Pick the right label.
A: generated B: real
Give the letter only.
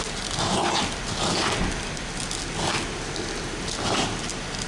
B